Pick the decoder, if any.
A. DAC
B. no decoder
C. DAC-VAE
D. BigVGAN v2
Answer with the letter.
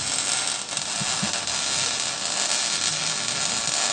B